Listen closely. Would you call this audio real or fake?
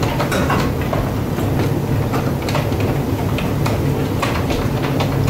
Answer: real